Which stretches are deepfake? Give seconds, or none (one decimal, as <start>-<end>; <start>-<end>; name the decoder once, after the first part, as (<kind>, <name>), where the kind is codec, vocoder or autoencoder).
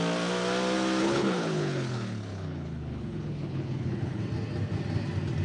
1.0-4.2 (codec, HILCodec)